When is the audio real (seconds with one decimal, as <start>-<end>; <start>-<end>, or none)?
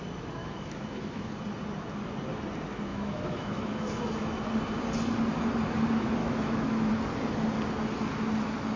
0.0-0.4; 1.3-2.9; 4.0-6.2; 6.9-8.8